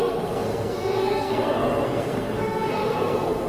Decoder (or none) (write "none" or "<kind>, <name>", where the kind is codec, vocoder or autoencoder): codec, SNAC